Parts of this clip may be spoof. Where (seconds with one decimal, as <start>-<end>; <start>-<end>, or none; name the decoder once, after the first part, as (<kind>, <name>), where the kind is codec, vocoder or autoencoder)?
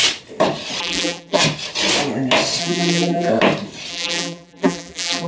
0.8-1.4 (vocoder, BigVGAN v2); 2.6-3.3; 3.9-5.3